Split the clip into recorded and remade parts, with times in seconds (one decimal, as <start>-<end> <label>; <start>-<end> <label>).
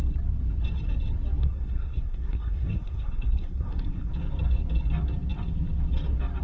0.0-1.4 recorded; 1.4-4.1 remade; 4.1-6.4 recorded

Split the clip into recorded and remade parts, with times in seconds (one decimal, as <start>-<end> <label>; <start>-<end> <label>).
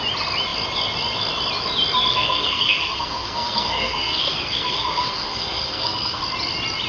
0.0-2.1 recorded; 2.1-6.2 remade; 6.2-6.9 recorded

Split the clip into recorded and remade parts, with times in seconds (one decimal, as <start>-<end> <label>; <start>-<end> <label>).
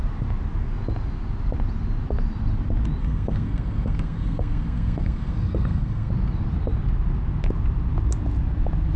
0.0-3.0 recorded; 3.0-6.1 remade; 6.1-9.0 recorded